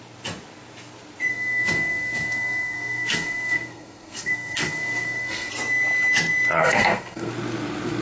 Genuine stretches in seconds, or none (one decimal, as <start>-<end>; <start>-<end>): 0.0-1.3; 5.5-6.6; 7.3-8.0